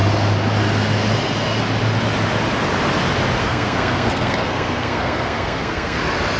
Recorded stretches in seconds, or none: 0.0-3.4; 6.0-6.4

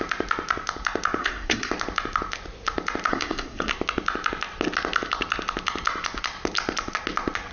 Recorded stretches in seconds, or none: 0.0-1.2; 1.7-3.1; 3.7-7.5